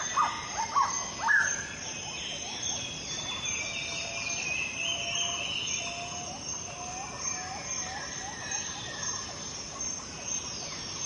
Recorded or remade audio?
recorded